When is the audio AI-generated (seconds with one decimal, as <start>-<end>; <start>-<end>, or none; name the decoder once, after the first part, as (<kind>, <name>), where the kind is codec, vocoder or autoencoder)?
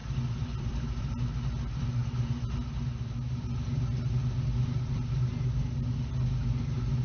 0.0-1.0 (vocoder, BigVGAN v2)